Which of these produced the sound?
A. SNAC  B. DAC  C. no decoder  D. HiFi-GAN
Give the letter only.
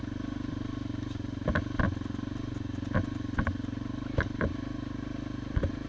C